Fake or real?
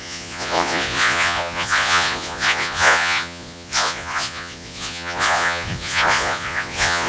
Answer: fake